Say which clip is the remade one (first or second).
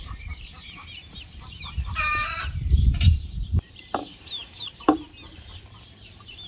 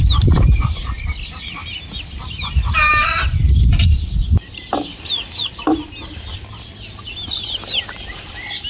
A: first